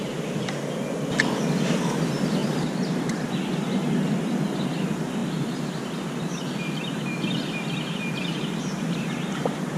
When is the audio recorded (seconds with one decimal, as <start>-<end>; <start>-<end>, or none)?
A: 0.0-2.4; 3.3-9.8